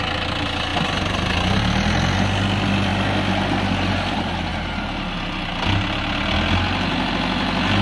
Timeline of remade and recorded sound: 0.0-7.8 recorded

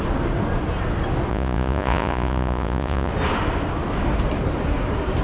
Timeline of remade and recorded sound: 0.0-1.3 recorded; 1.3-3.1 remade; 3.1-5.2 recorded